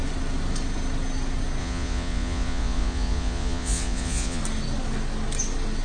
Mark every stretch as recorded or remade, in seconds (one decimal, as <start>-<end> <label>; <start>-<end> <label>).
0.0-1.6 recorded; 1.6-4.4 remade; 4.4-5.8 recorded